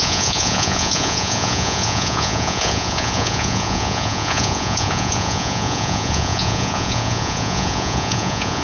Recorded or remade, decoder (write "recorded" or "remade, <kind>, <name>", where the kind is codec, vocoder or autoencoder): remade, vocoder, Vocos